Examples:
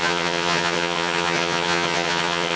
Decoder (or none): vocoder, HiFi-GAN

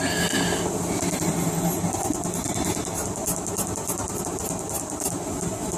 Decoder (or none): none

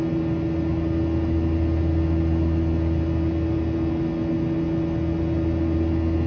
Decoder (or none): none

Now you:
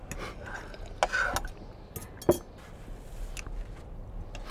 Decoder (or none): none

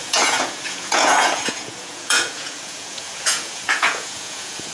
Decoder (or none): vocoder, Vocos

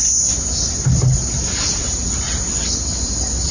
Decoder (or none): none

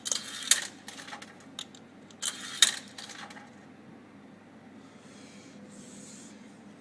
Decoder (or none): none